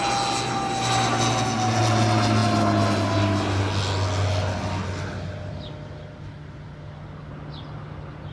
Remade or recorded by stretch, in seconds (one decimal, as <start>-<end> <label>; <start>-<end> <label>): 0.0-8.3 recorded